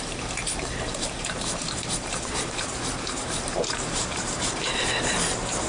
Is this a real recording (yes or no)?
no